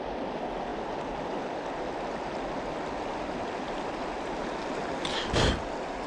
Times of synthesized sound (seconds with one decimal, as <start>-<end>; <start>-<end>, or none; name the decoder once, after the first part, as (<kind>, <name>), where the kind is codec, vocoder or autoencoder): none